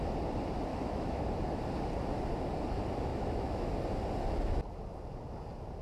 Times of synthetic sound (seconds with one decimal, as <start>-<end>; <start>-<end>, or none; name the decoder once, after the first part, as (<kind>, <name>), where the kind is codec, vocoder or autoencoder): 0.7-1.3 (autoencoder, DAC-VAE); 3.1-3.7

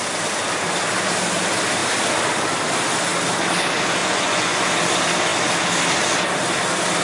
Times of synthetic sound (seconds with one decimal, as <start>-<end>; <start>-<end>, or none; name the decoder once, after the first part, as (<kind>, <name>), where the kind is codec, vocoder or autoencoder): 4.0-4.7 (vocoder, Vocos)

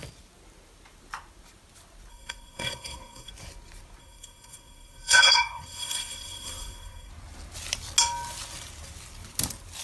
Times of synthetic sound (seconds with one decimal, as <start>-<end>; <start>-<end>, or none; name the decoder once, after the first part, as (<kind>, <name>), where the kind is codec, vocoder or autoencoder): 2.1-3.3 (codec, SNAC); 4.0-7.1

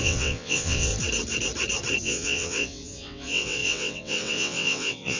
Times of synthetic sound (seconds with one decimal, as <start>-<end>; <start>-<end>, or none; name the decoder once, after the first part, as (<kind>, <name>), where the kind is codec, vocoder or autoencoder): 0.0-0.9 (vocoder, WaveNeXt); 2.0-5.2